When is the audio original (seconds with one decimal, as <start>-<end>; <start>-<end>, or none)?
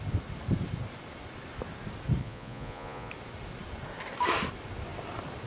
0.0-2.2; 3.1-5.5